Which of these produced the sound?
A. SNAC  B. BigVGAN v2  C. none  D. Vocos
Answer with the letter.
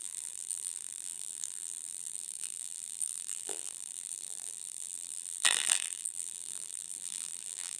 B